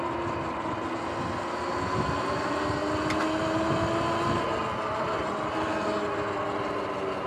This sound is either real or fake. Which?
real